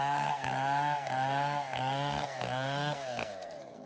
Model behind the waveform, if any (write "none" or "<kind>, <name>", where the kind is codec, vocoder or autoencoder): codec, SNAC